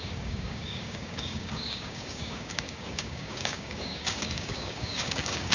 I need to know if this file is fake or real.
fake